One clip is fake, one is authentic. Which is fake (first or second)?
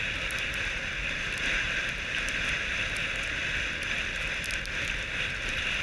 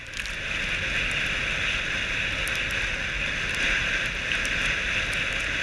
first